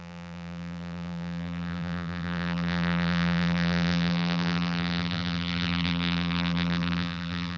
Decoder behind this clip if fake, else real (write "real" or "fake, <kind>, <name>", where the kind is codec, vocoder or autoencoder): fake, vocoder, BigVGAN v2